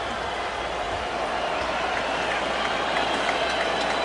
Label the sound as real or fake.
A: real